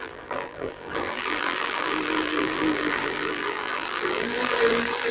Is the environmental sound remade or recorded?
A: remade